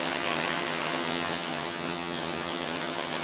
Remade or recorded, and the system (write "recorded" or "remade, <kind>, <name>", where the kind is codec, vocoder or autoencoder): remade, vocoder, HiFi-GAN